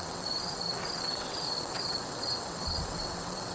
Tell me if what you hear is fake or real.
fake